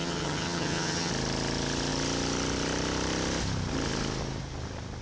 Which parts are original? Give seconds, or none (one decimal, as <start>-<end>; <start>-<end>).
1.1-5.0